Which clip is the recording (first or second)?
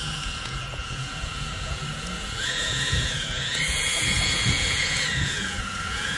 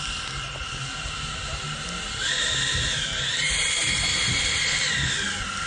second